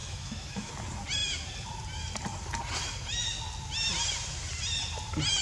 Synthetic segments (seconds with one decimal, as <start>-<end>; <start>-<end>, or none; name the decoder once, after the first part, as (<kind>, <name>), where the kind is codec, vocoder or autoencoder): 0.0-0.7 (autoencoder, DAC-VAE)